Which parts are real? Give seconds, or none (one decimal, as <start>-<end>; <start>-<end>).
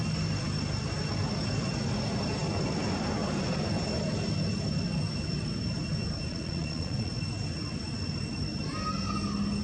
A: 0.0-6.3; 7.1-9.6